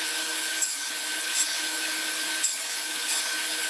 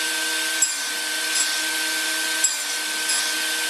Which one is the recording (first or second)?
second